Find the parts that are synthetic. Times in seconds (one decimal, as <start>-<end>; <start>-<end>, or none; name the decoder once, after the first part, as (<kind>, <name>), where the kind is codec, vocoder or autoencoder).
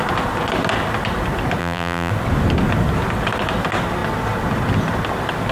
1.6-2.1 (vocoder, BigVGAN v2)